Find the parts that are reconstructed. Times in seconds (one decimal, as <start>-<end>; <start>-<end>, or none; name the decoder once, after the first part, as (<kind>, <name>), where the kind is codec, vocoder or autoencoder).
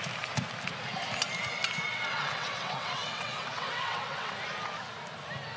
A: 1.9-4.3 (vocoder, WaveNeXt)